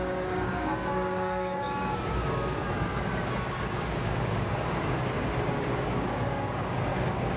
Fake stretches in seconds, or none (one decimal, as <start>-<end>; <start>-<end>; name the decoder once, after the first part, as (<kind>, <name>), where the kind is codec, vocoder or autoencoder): 0.0-6.9 (codec, DAC)